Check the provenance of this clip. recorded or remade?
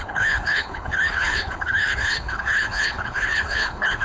remade